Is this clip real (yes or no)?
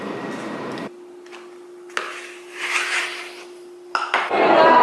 yes